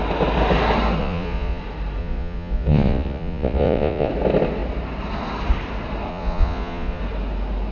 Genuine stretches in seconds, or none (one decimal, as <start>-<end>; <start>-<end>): 0.0-1.0; 1.6-2.0; 4.1-6.1; 7.0-7.7